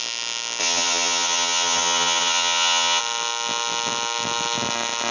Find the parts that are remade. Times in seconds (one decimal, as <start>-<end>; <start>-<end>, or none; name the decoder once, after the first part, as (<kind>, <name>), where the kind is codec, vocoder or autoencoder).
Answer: 0.6-3.0 (vocoder, HiFi-GAN)